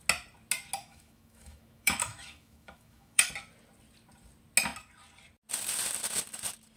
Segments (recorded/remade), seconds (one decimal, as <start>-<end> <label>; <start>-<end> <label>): 0.0-0.8 recorded; 0.8-3.3 remade; 3.3-6.8 recorded